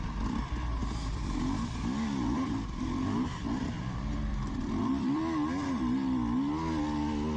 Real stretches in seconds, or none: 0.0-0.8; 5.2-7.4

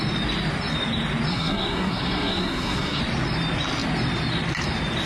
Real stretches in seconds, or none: 0.0-1.3; 3.0-5.1

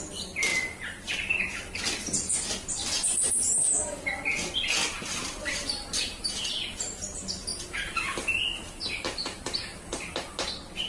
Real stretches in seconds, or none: 0.0-2.8; 3.7-4.8; 6.8-7.5; 10.5-10.9

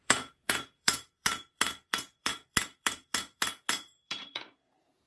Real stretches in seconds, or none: none

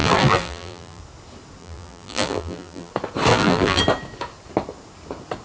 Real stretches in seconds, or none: 1.0-1.6; 2.9-3.3; 3.8-5.4